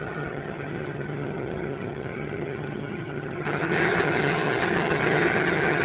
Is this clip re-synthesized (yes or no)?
yes